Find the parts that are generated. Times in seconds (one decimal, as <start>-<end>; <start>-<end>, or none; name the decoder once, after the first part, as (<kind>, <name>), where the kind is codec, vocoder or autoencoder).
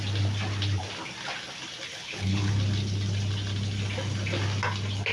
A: 1.9-2.5 (codec, HILCodec)